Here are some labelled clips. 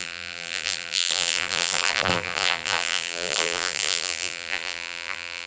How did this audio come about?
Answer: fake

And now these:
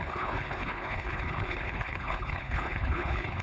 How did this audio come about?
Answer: fake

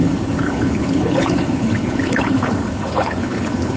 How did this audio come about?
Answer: fake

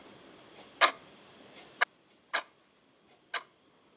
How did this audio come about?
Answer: real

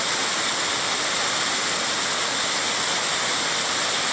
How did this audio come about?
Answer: real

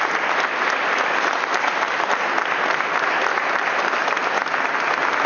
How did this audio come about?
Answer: real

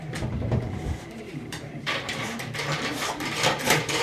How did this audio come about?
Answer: fake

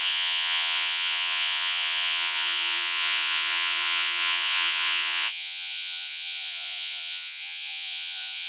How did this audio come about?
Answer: fake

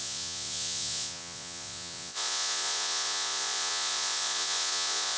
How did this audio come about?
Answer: fake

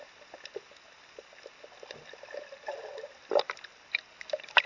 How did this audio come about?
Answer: real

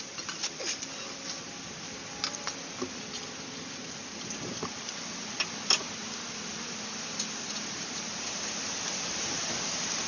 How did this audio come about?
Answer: real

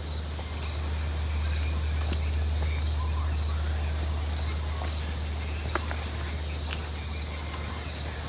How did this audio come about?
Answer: real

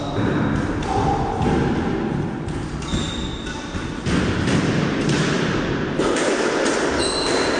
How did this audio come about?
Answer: real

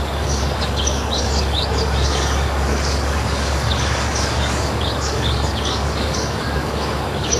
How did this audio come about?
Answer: fake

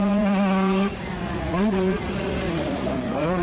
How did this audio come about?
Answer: fake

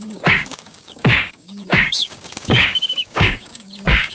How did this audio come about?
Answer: fake